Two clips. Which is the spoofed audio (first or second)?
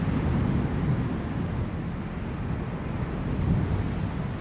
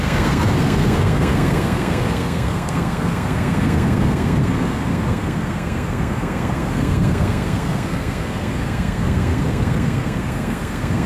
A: second